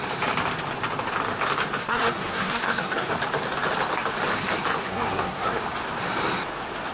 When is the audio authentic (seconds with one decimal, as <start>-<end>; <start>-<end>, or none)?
0.0-1.8; 3.1-4.8; 5.6-6.9